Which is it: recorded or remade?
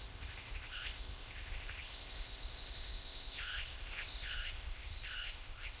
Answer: remade